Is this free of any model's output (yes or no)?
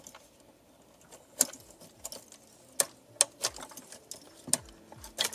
yes